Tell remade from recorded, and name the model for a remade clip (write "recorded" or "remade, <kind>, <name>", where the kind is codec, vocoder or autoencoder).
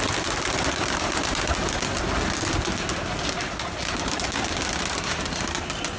recorded